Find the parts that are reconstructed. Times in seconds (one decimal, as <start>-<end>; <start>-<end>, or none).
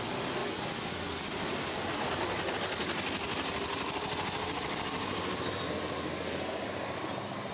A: none